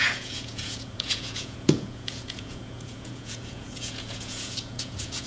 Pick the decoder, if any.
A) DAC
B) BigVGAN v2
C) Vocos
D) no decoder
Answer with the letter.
C